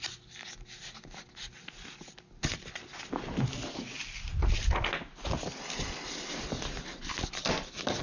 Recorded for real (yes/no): yes